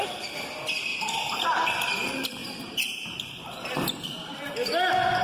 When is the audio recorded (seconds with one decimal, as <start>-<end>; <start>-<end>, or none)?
0.0-0.9; 1.7-2.4; 3.4-5.2